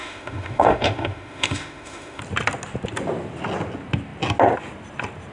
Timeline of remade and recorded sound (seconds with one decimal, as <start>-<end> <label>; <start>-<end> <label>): 0.0-2.2 remade; 2.2-5.3 recorded